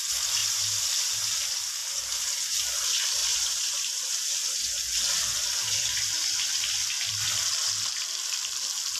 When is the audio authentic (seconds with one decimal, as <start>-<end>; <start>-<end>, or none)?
0.0-0.4; 0.9-3.2; 7.7-9.0